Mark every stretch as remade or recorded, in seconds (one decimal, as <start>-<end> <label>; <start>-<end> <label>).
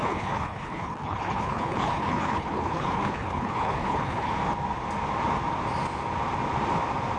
0.0-4.3 remade; 4.3-7.2 recorded